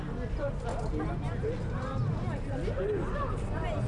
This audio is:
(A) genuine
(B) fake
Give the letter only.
A